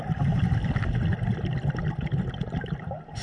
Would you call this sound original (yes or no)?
yes